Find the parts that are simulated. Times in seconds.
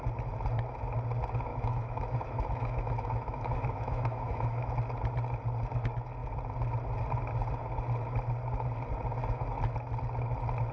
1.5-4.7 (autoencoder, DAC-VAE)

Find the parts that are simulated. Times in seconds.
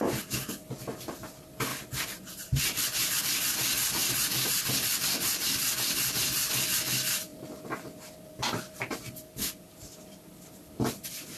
1.7-3.2 (vocoder, BigVGAN v2)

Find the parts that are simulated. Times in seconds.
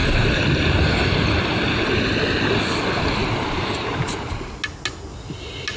0.0-1.5 (vocoder, BigVGAN v2); 3.2-4.2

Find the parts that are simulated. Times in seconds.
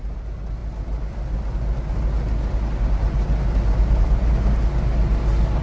none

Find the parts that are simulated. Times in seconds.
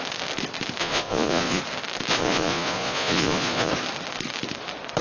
0.8-1.6 (vocoder, Vocos); 2.1-3.7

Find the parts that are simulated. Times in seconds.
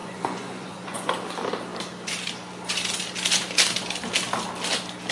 0.0-1.1 (vocoder, Vocos)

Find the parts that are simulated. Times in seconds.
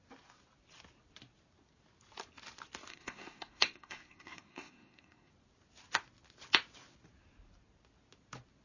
2.9-5.3 (codec, SNAC)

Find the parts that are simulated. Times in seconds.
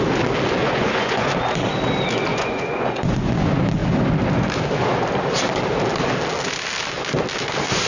0.6-1.3 (vocoder, Vocos); 2.3-3.3